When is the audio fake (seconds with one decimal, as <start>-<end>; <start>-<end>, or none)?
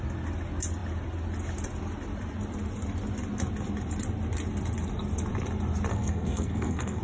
5.9-7.0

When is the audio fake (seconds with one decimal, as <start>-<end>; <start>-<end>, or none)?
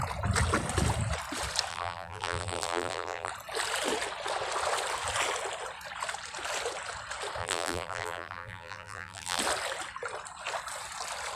1.7-3.3; 7.4-9.4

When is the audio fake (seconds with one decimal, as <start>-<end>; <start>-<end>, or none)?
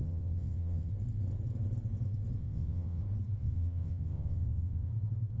0.0-0.9; 2.4-3.0; 3.4-4.9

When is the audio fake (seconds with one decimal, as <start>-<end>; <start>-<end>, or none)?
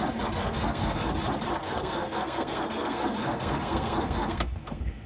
0.4-1.1; 1.6-5.1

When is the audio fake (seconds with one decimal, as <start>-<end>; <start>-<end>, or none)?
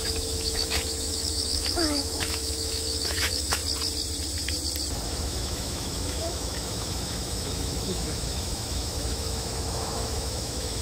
0.0-3.6; 5.1-10.8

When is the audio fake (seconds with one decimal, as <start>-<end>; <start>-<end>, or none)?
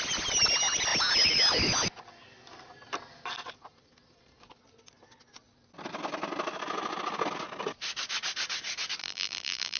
9.0-9.8